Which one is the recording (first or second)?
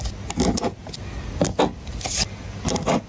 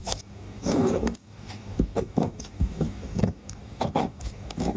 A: first